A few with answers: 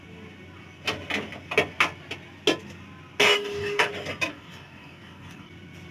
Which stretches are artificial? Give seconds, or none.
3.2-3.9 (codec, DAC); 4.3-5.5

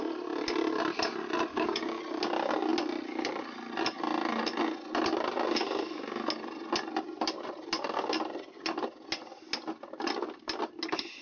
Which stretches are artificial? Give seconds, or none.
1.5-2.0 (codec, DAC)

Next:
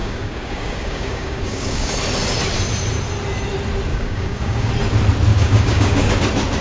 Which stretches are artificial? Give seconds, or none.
0.0-1.9 (codec, DAC); 3.9-4.7; 5.3-6.1